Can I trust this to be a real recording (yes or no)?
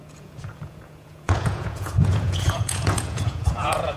no